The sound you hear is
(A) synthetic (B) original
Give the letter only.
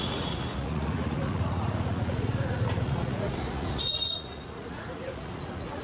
A